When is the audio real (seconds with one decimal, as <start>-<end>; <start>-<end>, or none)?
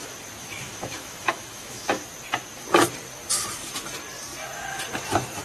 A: 0.0-0.4; 1.9-5.4